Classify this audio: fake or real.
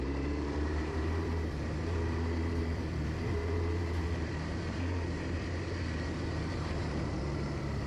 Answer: fake